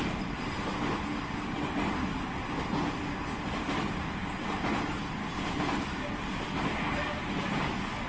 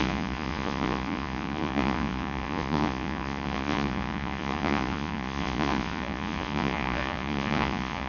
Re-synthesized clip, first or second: second